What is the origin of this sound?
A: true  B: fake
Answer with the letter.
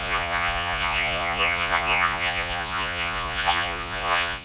B